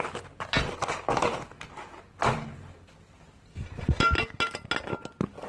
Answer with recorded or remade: recorded